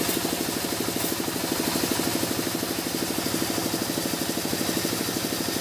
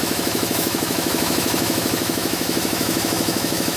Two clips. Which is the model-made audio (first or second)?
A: second